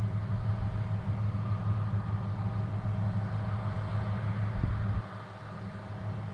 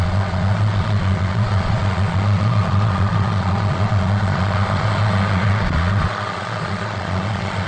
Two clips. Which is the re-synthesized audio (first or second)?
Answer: second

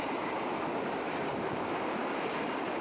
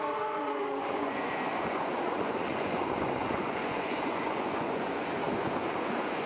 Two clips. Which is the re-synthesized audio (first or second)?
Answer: second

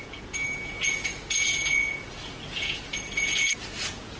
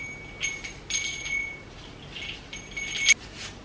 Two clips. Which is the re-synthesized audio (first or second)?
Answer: first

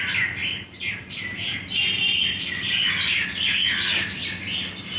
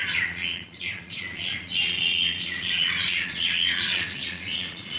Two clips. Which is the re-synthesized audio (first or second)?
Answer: second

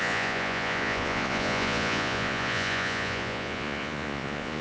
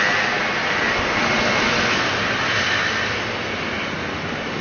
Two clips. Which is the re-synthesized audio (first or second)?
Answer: first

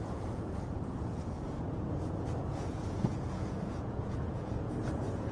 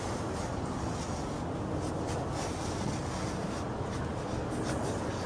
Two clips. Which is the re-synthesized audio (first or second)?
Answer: first